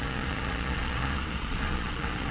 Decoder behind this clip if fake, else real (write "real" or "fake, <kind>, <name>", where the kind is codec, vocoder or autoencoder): fake, vocoder, Vocos